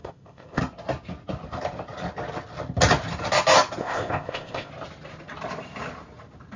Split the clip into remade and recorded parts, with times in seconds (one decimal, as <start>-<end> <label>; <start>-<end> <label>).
0.0-0.6 remade; 0.6-3.8 recorded; 3.8-4.7 remade; 4.7-6.6 recorded